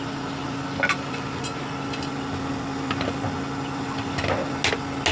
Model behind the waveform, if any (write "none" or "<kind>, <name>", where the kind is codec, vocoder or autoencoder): none